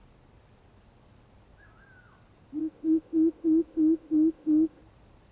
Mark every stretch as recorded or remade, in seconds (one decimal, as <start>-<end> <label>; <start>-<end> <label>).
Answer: 0.0-2.6 recorded; 2.6-4.8 remade; 4.8-5.3 recorded